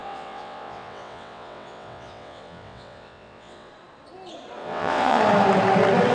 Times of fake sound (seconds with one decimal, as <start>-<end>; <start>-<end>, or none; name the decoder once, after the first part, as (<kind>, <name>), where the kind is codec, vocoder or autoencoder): 0.0-3.7 (vocoder, WaveNeXt); 4.6-5.2